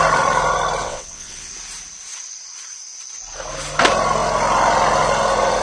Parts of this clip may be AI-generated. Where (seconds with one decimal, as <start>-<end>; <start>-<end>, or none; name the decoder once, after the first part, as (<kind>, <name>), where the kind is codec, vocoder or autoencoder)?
0.8-1.5 (vocoder, WaveNeXt)